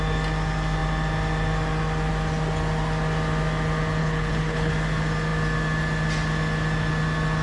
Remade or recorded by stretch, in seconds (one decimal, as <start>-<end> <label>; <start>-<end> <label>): 0.0-4.0 recorded; 4.0-4.7 remade; 4.7-7.4 recorded